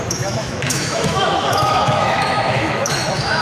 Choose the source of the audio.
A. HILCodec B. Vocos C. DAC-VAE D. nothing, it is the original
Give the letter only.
C